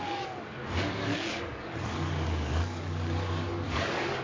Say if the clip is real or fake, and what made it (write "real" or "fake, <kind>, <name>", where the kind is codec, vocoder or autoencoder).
fake, codec, DAC